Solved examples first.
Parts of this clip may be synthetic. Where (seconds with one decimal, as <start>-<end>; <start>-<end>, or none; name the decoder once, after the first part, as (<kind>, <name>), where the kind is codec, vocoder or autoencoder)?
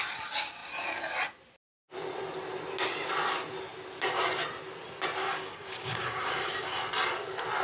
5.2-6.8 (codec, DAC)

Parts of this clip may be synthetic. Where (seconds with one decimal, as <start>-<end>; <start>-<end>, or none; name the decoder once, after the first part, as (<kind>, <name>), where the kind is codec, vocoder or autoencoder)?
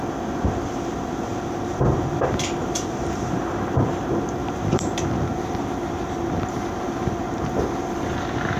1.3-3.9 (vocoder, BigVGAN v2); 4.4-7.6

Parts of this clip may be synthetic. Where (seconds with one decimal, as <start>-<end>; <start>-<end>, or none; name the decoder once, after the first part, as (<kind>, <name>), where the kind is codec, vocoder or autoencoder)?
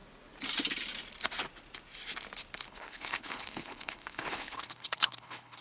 2.7-5.6 (codec, HILCodec)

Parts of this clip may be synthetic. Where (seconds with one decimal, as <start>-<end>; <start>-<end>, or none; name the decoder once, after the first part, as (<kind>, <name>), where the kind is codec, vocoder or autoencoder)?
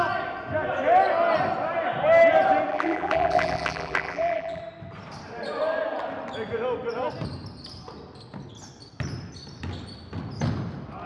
2.7-4.6 (vocoder, BigVGAN v2)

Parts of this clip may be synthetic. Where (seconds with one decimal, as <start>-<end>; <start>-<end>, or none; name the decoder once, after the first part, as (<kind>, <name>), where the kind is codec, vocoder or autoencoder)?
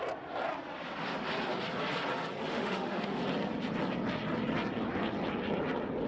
2.5-3.2 (autoencoder, DAC-VAE)